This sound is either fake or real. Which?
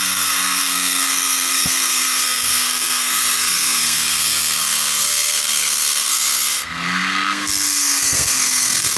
fake